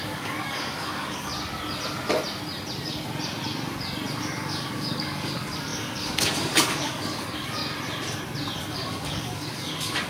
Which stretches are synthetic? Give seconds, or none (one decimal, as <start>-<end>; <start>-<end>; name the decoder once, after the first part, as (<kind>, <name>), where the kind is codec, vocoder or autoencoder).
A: 0.0-1.3 (codec, DAC); 4.2-7.6; 8.7-10.1